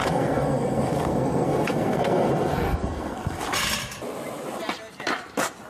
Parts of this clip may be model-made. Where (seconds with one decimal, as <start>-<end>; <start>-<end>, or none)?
0.0-3.4